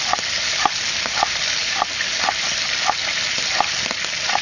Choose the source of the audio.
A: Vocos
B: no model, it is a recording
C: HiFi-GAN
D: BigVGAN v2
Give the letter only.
B